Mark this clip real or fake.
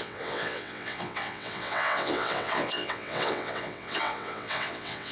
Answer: fake